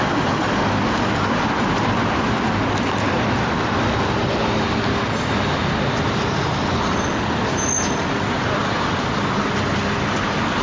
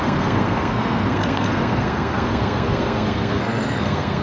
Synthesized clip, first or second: second